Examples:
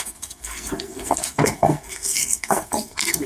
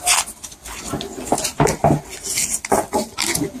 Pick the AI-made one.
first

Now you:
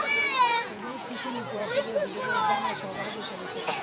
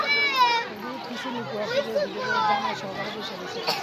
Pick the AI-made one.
first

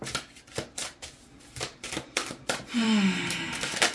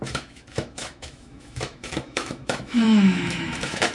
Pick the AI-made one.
second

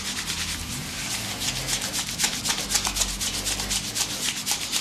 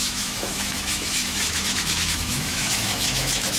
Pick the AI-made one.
second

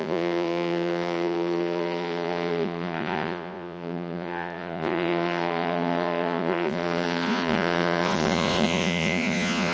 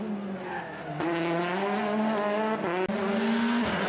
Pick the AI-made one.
first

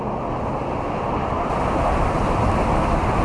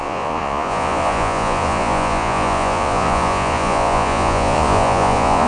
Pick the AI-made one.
second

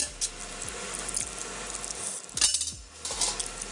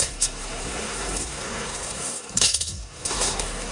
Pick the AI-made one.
second